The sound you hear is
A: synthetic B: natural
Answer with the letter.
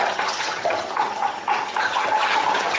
A